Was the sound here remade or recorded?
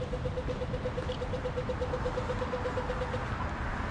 recorded